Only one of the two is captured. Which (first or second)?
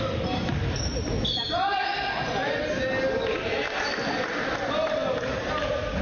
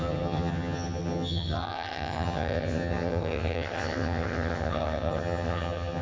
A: first